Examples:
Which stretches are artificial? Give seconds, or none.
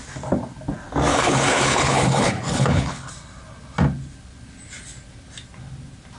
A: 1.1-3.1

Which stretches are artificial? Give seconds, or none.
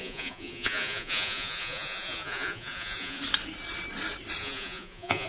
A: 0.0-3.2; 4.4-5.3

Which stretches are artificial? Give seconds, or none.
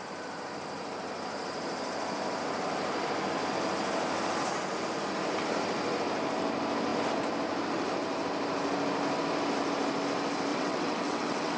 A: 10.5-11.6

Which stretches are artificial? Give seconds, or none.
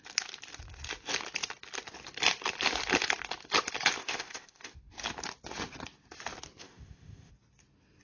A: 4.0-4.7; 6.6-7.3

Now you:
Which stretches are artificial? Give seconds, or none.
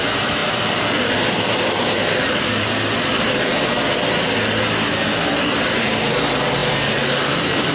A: none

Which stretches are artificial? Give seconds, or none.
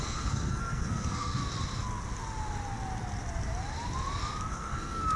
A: 0.0-1.4; 4.5-5.2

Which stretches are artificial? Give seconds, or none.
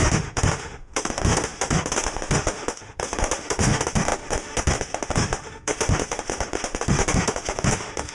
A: 0.0-8.1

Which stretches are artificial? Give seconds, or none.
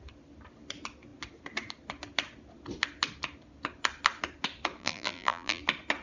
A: 4.8-5.6